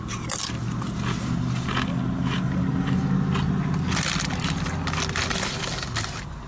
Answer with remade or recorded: recorded